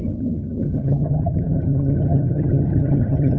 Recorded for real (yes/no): no